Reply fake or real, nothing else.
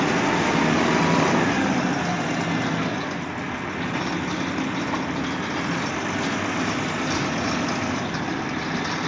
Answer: real